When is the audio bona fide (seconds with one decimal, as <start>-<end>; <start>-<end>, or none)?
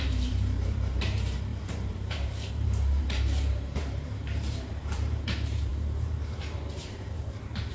none